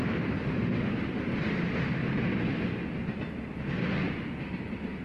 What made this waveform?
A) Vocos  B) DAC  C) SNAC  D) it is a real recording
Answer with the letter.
D